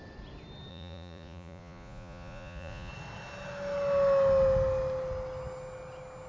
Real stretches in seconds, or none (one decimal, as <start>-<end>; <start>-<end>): 0.0-0.7; 2.9-6.3